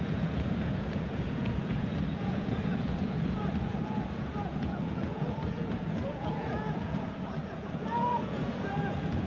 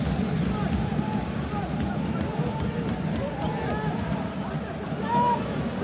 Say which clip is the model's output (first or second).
first